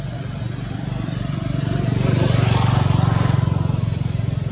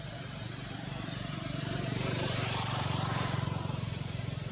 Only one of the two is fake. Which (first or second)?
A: second